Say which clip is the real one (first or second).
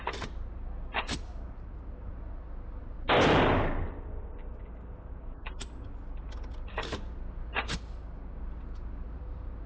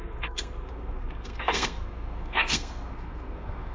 first